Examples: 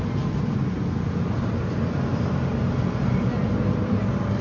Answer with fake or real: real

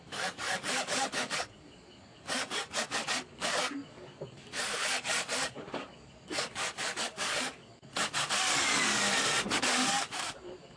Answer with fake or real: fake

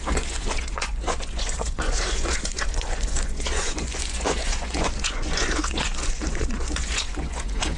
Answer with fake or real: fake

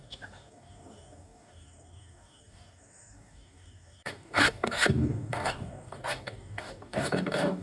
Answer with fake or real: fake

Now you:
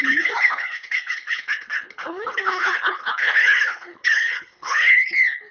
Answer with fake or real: fake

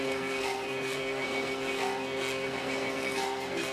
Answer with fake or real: fake